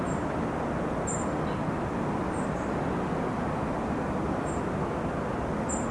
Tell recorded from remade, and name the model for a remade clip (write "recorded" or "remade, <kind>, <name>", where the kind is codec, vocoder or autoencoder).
recorded